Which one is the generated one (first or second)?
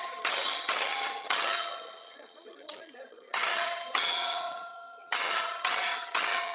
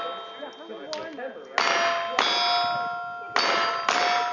first